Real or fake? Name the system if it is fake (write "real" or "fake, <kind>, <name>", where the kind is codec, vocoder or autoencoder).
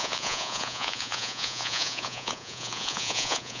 fake, vocoder, Vocos